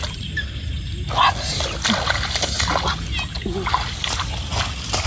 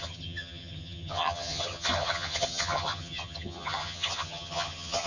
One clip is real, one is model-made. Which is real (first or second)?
first